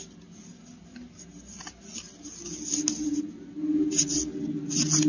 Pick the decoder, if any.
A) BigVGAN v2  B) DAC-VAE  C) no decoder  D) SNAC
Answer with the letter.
C